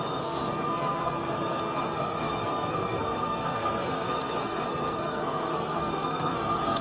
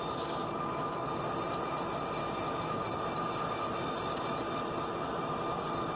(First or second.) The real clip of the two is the second